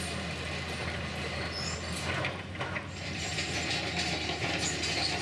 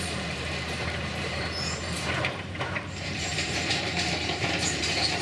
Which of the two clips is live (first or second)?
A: first